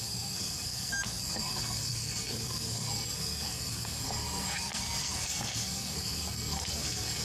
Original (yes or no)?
no